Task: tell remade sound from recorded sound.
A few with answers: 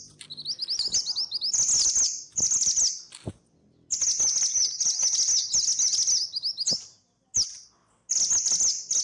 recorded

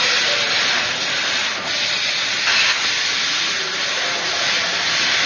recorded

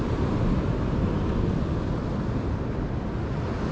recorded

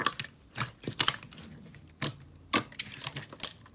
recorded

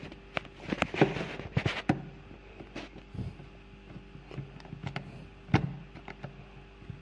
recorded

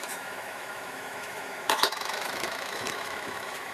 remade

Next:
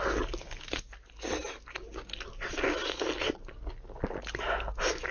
recorded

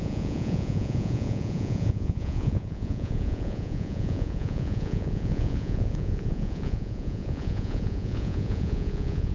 remade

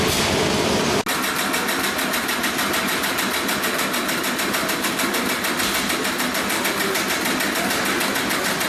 recorded